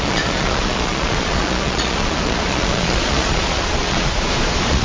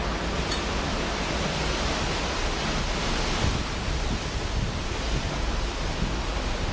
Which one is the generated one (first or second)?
first